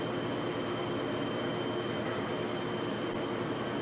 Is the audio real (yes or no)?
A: yes